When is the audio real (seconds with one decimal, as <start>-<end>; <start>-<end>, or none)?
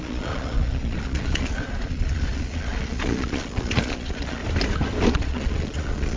4.4-5.1